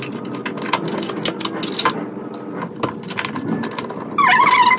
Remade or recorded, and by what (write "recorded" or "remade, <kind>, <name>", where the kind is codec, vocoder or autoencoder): recorded